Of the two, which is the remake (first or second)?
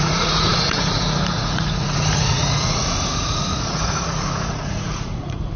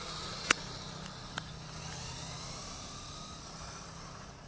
first